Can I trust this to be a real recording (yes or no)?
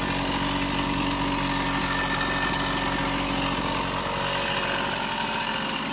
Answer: yes